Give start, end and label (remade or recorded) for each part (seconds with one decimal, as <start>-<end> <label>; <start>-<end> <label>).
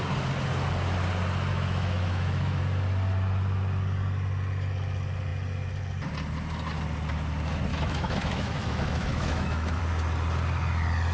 0.0-1.5 recorded; 1.5-2.6 remade; 2.6-7.7 recorded; 7.7-9.8 remade; 9.8-11.1 recorded